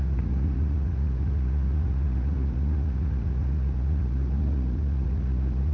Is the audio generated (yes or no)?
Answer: yes